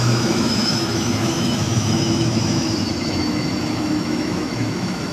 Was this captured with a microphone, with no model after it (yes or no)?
no